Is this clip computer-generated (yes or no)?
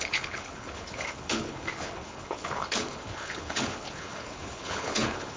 yes